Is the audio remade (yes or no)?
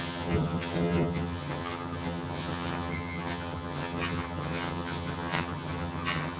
yes